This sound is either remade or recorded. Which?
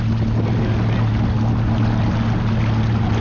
recorded